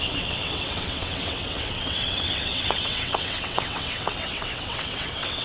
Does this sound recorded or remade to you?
remade